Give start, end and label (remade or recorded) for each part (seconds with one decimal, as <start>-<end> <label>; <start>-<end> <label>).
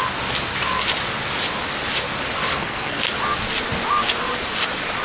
0.0-2.5 recorded; 2.5-3.0 remade; 3.0-5.0 recorded